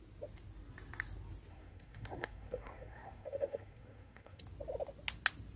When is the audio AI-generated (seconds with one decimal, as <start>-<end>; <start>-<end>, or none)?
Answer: 1.5-4.4